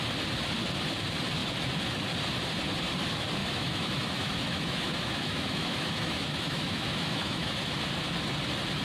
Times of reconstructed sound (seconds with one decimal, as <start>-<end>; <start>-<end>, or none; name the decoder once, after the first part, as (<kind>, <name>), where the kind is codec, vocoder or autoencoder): 3.4-7.6 (autoencoder, DAC-VAE)